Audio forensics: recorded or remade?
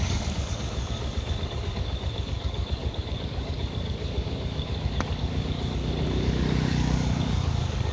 remade